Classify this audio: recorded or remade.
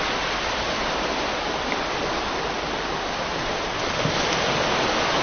recorded